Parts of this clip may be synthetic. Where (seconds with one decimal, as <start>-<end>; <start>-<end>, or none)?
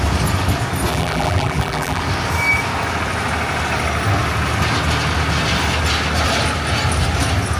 0.9-2.0